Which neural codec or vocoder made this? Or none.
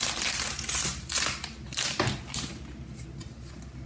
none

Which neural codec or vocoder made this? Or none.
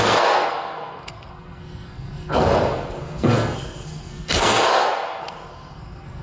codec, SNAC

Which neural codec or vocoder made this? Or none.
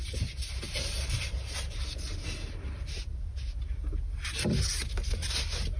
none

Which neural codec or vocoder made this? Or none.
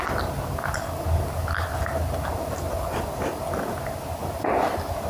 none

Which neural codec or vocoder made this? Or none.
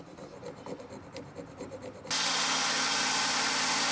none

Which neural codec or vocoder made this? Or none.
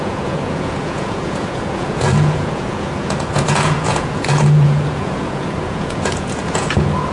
vocoder, Vocos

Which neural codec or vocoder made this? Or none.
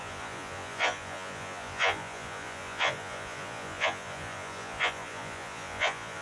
vocoder, Vocos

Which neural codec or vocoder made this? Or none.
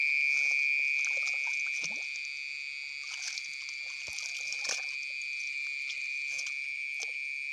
none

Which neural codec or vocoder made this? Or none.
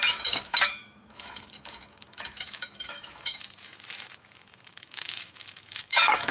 autoencoder, DAC-VAE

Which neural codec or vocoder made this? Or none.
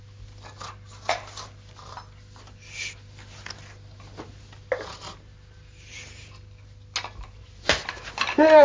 none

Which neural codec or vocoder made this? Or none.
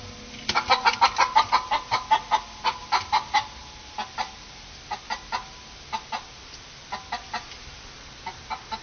none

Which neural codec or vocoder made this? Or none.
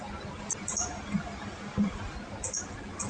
none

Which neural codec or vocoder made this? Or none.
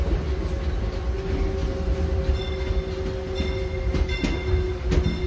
none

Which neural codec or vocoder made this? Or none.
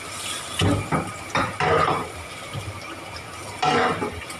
none